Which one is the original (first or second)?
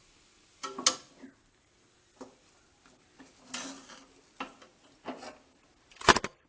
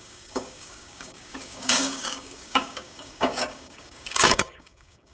first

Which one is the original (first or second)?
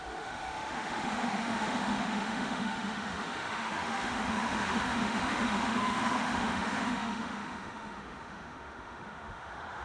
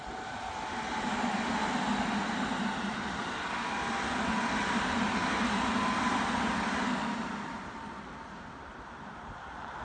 second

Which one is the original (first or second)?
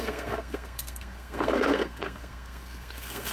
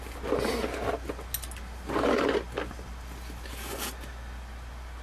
second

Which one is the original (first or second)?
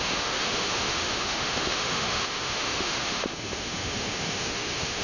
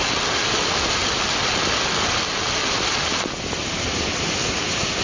second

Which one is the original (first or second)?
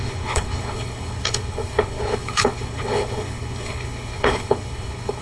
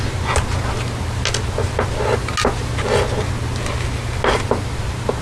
second